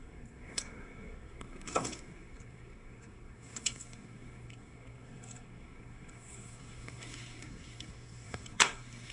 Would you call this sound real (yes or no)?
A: no